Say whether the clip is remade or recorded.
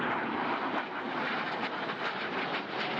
recorded